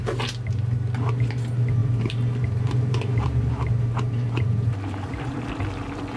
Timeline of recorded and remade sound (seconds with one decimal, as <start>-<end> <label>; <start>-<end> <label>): 0.0-1.8 recorded; 1.8-5.5 remade; 5.5-6.2 recorded